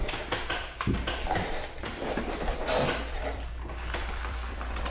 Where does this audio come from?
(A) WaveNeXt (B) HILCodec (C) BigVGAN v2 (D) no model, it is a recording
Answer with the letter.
C